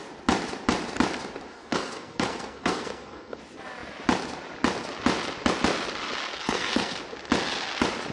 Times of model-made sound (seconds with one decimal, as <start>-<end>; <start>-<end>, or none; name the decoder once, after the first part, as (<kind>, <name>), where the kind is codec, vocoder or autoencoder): 1.5-3.4 (codec, SNAC); 6.3-7.0